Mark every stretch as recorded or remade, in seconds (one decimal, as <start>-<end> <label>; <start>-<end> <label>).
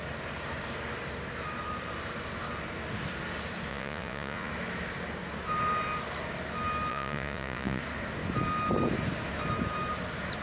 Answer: 0.0-3.7 recorded; 3.7-4.5 remade; 4.5-6.9 recorded; 6.9-7.8 remade; 7.8-10.4 recorded